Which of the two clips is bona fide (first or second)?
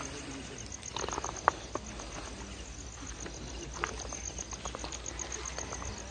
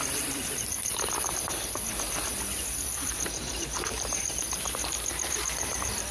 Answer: first